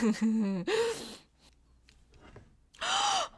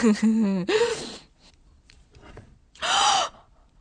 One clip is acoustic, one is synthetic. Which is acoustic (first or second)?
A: first